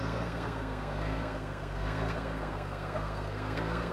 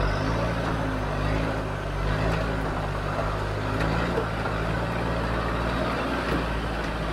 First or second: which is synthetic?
first